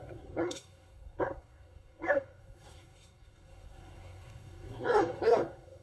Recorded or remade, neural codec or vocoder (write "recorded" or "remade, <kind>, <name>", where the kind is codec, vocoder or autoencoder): remade, codec, SNAC